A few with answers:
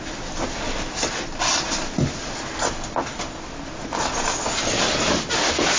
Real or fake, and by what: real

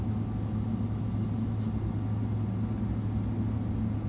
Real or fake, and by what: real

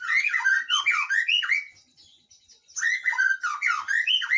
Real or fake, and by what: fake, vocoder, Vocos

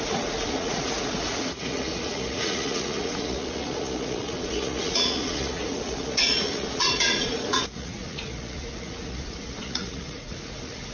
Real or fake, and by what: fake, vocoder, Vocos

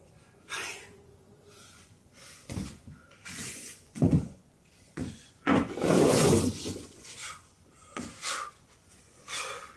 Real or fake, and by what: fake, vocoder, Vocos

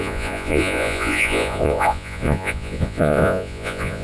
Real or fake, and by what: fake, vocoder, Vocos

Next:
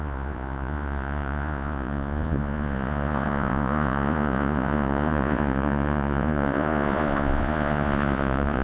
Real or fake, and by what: fake, vocoder, Vocos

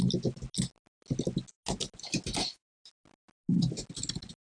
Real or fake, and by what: real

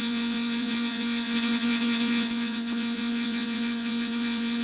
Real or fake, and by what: fake, vocoder, Vocos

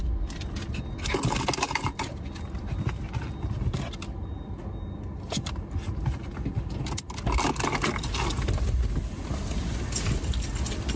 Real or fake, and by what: real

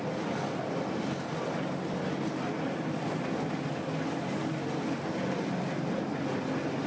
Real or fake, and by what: real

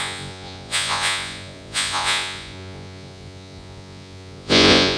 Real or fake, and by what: fake, vocoder, Vocos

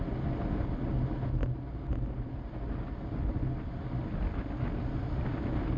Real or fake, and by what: real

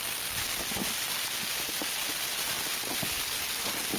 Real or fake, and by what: real